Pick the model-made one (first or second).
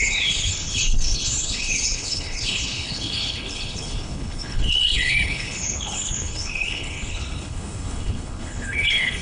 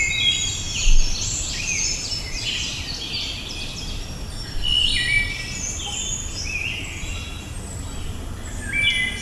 first